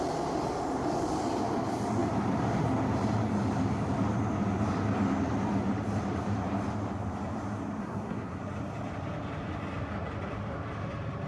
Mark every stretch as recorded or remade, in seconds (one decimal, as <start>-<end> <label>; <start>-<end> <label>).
0.0-7.8 recorded; 7.8-8.4 remade; 8.4-11.3 recorded